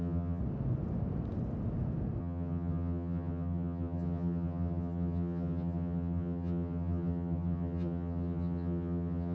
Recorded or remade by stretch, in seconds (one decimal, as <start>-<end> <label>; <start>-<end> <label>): 0.0-0.4 remade; 0.4-2.2 recorded; 2.2-9.3 remade

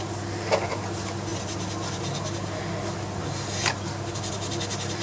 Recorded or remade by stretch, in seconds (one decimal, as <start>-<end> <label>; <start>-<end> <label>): 0.0-5.0 recorded